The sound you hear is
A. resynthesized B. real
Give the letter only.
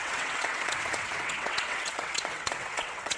A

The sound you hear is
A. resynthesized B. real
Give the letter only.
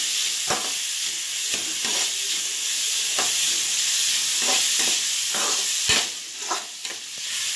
B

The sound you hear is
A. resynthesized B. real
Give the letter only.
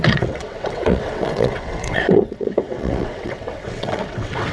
A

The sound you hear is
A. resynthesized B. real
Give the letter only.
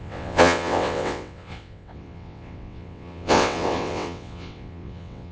A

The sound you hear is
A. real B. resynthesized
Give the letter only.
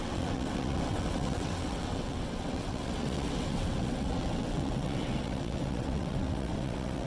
B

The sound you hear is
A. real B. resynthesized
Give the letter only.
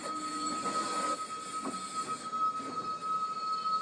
A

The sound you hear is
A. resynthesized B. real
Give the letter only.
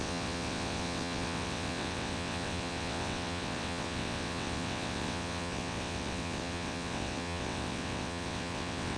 A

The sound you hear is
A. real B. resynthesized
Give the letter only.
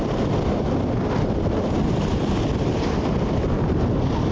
A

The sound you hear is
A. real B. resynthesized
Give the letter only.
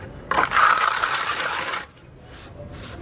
A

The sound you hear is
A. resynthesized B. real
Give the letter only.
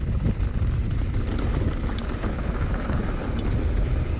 B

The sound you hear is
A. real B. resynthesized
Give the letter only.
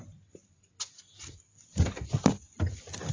A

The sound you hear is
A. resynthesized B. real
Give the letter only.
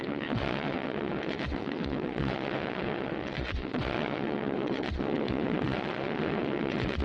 A